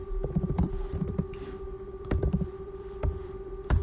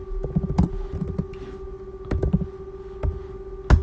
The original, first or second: second